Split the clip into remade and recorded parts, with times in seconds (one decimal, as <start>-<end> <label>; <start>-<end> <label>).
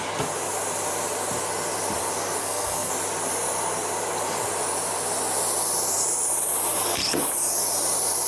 0.0-2.4 recorded; 2.4-2.9 remade; 2.9-8.3 recorded